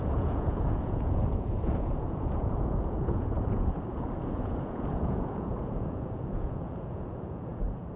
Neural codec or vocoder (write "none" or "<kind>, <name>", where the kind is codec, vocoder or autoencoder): vocoder, Vocos